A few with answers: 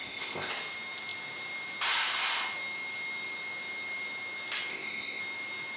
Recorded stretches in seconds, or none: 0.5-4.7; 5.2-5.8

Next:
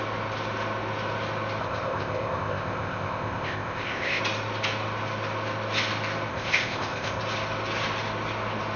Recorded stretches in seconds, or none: 0.0-1.6; 4.2-6.3; 7.2-8.8

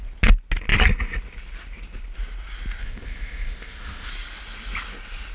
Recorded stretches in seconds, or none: 0.0-2.8; 4.1-5.3

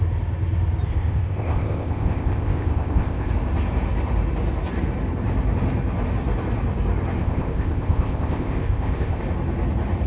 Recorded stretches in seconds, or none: 0.0-0.9; 3.3-7.2; 9.2-10.1

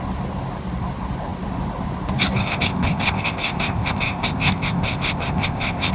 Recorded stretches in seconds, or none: 0.0-2.4

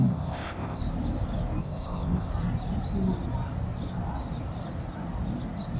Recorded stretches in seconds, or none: 0.8-1.6; 2.3-5.8